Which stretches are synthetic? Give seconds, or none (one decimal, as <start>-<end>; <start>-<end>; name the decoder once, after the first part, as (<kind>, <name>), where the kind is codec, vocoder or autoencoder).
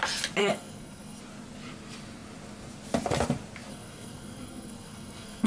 0.4-1.2 (codec, SNAC); 3.7-5.5